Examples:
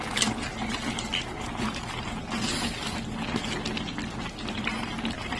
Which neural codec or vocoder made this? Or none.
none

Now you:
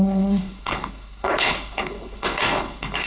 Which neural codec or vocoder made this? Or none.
codec, HILCodec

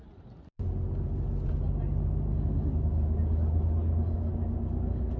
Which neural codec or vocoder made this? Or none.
none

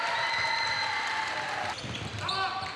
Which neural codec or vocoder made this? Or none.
none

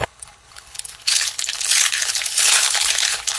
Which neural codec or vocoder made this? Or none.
codec, HILCodec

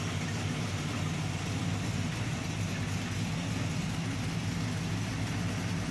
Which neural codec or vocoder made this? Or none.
none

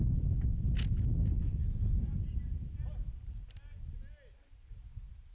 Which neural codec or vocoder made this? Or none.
none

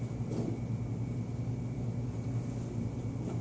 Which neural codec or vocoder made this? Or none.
none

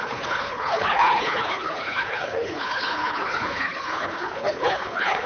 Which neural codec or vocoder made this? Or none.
codec, HILCodec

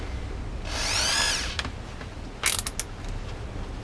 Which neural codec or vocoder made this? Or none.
none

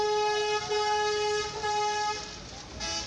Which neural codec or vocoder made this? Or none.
none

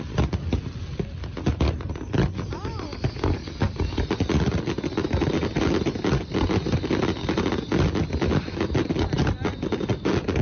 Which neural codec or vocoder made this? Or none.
none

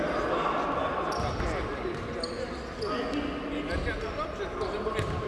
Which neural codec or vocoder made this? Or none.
none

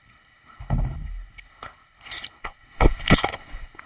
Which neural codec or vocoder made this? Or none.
codec, HILCodec